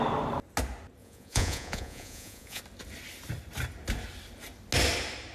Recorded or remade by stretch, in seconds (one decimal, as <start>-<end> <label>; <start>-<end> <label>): 0.0-1.0 recorded; 1.0-2.6 remade; 2.6-5.3 recorded